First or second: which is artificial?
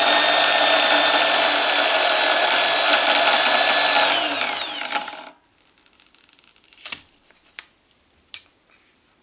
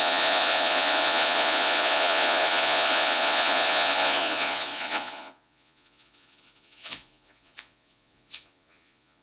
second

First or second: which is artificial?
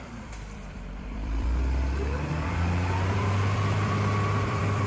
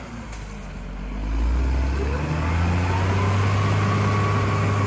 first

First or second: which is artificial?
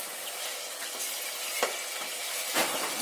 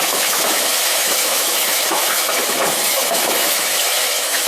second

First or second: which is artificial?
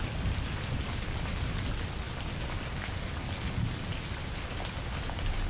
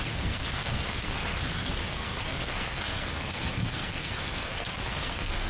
second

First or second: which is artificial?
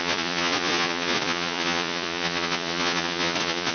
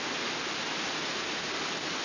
first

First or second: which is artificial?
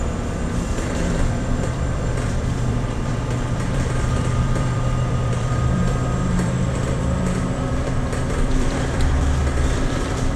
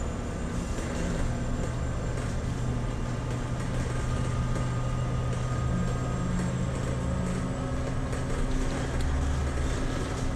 first